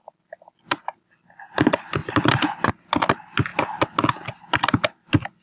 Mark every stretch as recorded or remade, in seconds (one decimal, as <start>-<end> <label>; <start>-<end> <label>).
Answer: 0.0-5.4 recorded